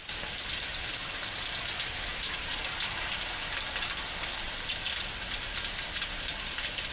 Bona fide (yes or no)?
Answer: yes